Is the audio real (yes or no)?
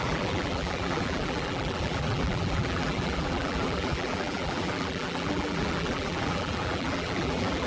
no